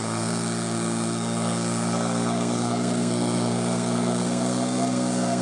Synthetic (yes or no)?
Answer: yes